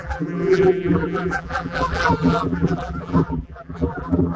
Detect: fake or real fake